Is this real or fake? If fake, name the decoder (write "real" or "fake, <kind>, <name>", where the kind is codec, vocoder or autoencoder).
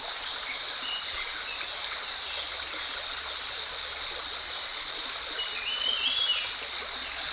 real